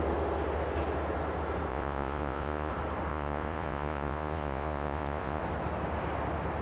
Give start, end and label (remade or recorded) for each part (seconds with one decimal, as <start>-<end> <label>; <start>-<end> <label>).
0.0-1.7 recorded; 1.7-2.7 remade; 2.7-3.1 recorded; 3.1-5.4 remade; 5.4-6.6 recorded